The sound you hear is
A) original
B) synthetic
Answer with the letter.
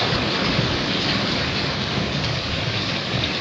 B